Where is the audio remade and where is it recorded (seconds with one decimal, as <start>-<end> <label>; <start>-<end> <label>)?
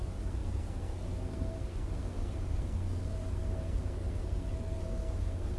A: 0.0-5.6 remade